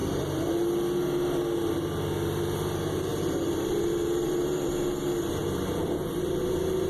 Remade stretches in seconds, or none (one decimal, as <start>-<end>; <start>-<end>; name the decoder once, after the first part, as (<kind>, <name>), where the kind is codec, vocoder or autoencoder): 0.0-0.5 (vocoder, BigVGAN v2); 3.1-5.0; 5.4-6.4